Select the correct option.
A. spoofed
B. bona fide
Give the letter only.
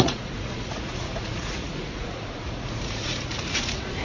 A